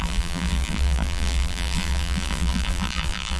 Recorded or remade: remade